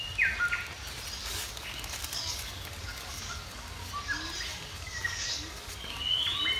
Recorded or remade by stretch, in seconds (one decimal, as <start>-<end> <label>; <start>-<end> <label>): 0.0-1.2 recorded; 1.2-3.9 remade; 3.9-4.5 recorded; 4.5-6.0 remade; 6.0-6.6 recorded